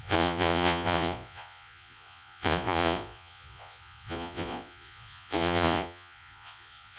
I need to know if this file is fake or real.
fake